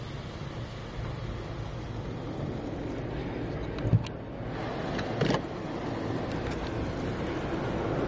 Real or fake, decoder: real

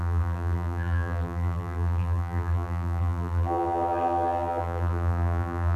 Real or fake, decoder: fake, vocoder, BigVGAN v2